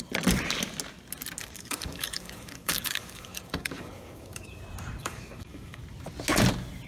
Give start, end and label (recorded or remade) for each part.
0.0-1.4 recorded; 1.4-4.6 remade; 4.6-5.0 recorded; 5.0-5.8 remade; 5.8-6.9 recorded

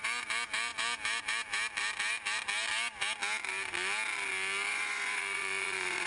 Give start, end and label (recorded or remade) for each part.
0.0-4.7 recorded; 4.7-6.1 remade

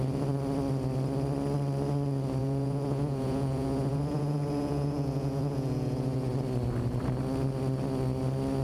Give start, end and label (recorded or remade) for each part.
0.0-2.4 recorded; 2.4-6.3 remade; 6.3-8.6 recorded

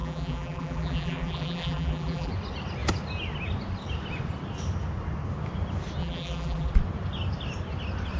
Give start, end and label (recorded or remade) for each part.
0.0-2.3 remade; 2.3-6.0 recorded; 6.0-6.7 remade; 6.7-8.2 recorded

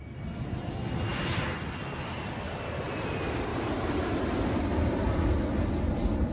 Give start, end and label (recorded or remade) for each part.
0.0-3.5 recorded; 3.5-5.3 remade; 5.3-6.3 recorded